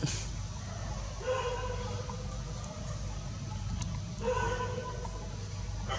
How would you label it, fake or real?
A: real